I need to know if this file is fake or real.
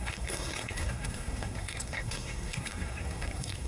fake